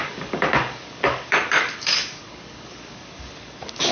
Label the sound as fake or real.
fake